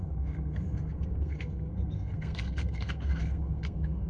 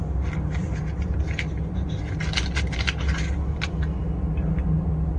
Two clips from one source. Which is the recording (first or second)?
second